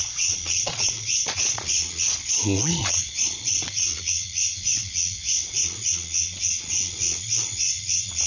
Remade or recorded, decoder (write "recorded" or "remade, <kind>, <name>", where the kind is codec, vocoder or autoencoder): remade, vocoder, Vocos